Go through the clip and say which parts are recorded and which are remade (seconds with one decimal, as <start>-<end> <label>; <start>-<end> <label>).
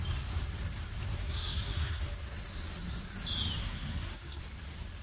0.0-1.2 recorded; 1.2-2.0 remade; 2.0-3.6 recorded; 3.6-4.4 remade; 4.4-5.0 recorded